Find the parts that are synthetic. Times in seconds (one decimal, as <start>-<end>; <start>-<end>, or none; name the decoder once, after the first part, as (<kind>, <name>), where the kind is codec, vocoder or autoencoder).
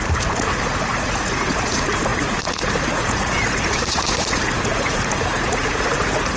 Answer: 0.0-6.4 (vocoder, Vocos)